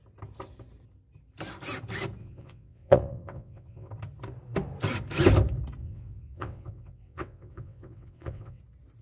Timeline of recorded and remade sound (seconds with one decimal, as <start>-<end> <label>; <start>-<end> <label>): 0.0-2.2 recorded; 2.2-3.9 remade; 3.9-5.8 recorded; 5.8-8.6 remade; 8.6-9.0 recorded